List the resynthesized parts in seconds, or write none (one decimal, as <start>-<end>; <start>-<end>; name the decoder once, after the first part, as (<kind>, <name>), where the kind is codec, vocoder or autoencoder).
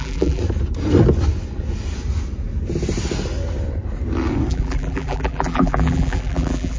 0.0-0.4 (vocoder, BigVGAN v2); 4.5-6.8